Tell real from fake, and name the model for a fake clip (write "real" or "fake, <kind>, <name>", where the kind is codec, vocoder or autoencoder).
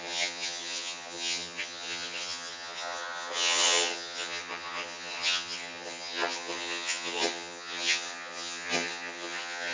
fake, vocoder, HiFi-GAN